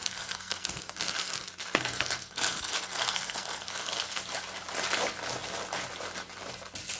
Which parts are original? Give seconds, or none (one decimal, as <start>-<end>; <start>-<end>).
4.2-7.0